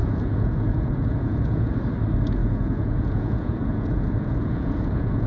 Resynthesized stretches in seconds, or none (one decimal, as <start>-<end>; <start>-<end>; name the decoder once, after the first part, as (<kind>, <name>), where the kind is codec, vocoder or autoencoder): 0.0-1.7 (vocoder, Vocos); 2.4-5.3